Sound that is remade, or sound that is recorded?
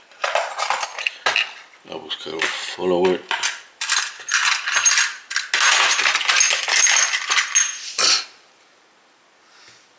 recorded